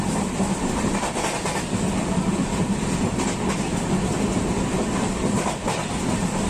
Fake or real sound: real